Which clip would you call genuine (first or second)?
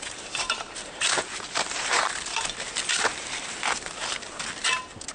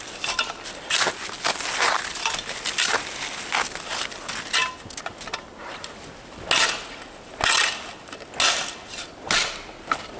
second